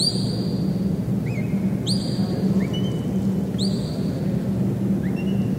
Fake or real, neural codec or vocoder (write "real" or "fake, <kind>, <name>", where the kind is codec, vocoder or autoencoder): real